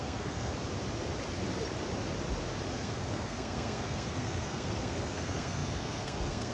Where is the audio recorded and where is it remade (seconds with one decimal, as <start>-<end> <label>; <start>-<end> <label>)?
0.0-0.5 remade; 0.5-2.7 recorded; 2.7-6.5 remade